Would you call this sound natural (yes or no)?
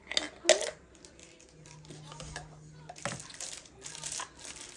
yes